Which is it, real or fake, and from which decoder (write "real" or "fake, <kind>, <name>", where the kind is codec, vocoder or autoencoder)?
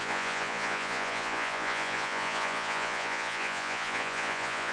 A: fake, vocoder, Vocos